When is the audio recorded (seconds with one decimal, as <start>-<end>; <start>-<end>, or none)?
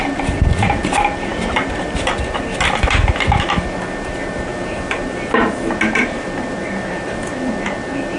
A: 0.0-4.5; 5.3-8.2